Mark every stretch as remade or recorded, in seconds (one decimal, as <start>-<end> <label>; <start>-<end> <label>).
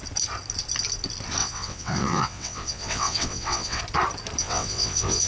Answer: 0.0-1.4 recorded; 1.4-3.8 remade; 3.8-4.4 recorded; 4.4-5.3 remade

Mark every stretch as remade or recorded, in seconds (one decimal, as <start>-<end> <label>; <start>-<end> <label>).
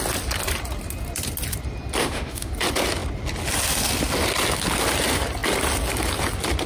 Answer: 0.0-2.0 recorded; 2.0-2.5 remade; 2.5-6.7 recorded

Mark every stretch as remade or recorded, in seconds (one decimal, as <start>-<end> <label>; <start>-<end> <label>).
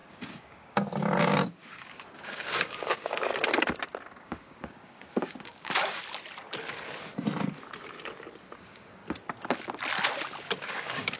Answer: 0.0-3.3 remade; 3.3-4.2 recorded; 4.2-6.0 remade; 6.0-8.6 recorded; 8.6-9.0 remade; 9.0-10.4 recorded; 10.4-11.2 remade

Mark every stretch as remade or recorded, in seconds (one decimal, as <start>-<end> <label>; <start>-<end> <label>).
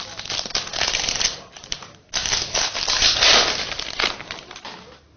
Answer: 0.0-0.7 recorded; 0.7-3.8 remade; 3.8-5.2 recorded